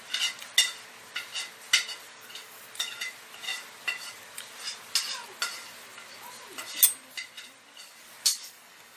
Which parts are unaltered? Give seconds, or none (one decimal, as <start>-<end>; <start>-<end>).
0.0-2.0; 2.6-8.3